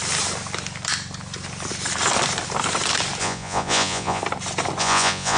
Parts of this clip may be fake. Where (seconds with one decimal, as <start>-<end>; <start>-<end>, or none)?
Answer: 3.2-4.2; 4.8-5.4